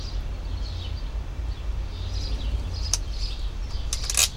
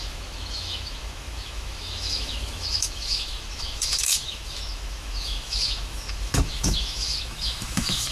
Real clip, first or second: first